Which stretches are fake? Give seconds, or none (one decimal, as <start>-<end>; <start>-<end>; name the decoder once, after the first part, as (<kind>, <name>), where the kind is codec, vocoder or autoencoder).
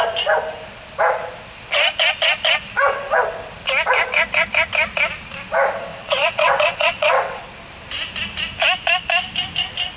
5.9-7.4 (vocoder, WaveNeXt)